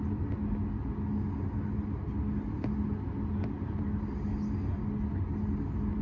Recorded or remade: recorded